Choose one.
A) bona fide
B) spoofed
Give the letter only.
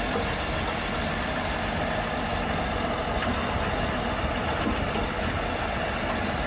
A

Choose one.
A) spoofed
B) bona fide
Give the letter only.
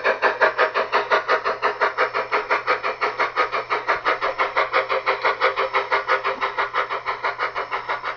B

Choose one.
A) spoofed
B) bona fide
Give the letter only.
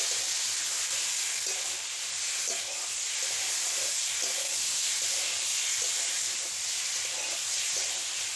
B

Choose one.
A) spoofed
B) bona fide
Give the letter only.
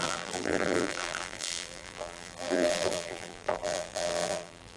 A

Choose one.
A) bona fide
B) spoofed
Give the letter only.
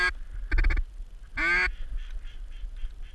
A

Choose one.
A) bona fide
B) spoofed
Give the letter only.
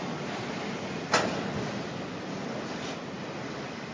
A